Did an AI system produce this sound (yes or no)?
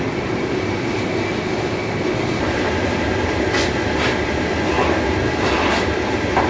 no